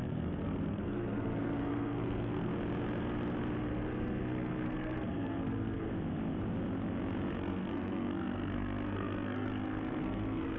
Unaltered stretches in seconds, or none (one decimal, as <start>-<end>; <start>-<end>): 2.5-3.7; 5.9-7.4